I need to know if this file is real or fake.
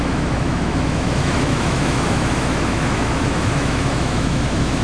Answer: fake